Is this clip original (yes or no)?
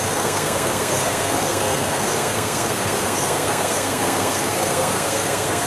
no